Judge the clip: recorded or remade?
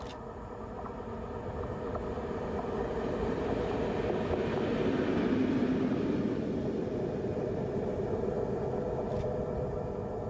recorded